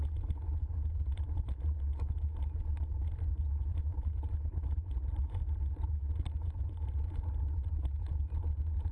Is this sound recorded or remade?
remade